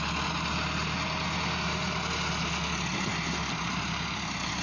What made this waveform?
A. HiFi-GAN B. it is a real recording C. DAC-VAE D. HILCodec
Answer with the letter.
B